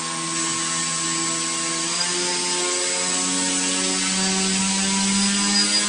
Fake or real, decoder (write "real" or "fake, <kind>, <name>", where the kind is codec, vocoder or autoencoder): real